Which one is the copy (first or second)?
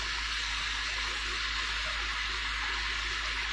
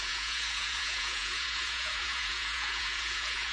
second